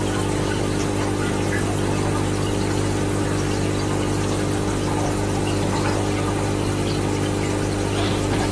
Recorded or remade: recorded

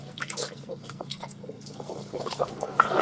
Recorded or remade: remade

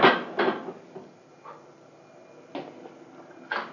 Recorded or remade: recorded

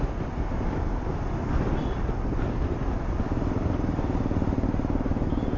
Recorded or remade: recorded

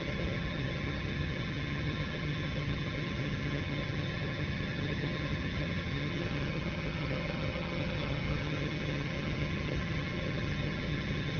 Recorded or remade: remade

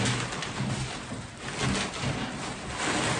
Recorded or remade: recorded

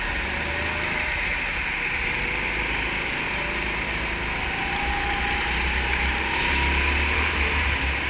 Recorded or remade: recorded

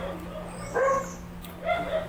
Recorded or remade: recorded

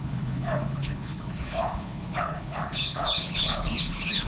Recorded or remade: remade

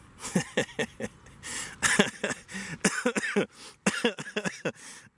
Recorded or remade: recorded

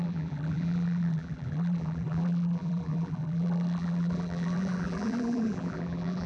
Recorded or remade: remade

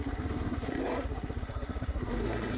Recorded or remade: remade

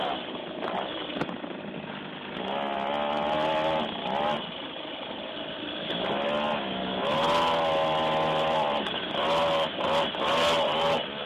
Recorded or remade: recorded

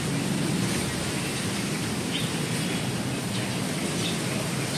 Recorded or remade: recorded